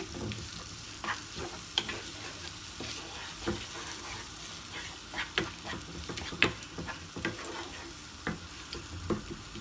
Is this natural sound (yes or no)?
yes